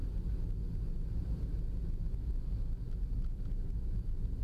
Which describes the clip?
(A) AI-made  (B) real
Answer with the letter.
B